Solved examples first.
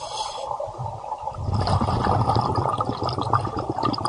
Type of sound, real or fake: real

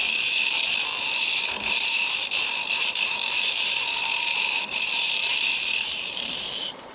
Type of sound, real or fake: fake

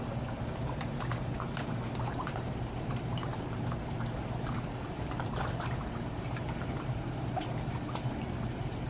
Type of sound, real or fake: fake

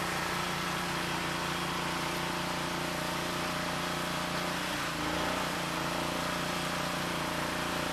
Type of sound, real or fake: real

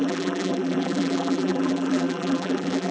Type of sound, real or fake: fake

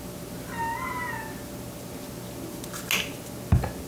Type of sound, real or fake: real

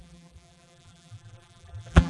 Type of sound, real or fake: fake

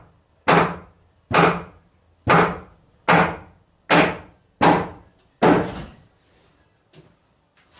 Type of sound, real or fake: real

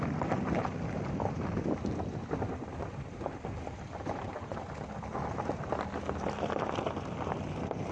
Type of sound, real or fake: real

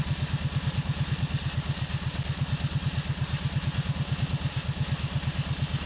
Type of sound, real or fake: real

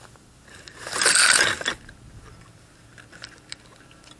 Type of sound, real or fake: real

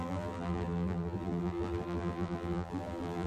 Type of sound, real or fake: fake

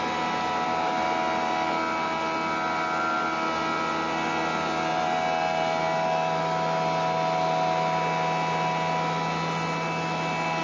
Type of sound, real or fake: real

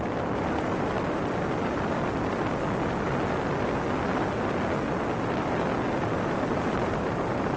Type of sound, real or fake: real